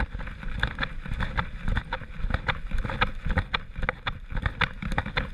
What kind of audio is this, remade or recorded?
recorded